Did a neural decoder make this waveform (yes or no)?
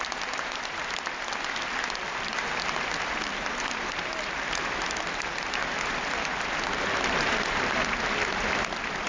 no